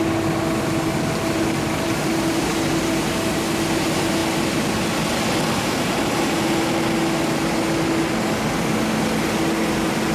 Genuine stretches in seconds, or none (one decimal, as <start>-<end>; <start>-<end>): 0.0-10.1